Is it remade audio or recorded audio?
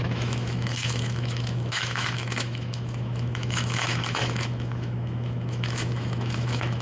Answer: remade